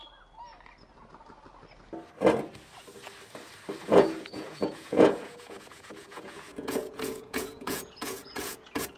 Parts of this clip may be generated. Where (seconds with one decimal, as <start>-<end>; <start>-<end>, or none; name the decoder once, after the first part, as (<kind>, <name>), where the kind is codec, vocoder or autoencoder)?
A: 3.8-9.0 (vocoder, Vocos)